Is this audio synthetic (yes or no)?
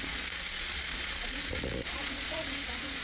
yes